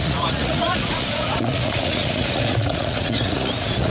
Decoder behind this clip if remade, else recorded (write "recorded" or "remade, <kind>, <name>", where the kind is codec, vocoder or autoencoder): remade, vocoder, Vocos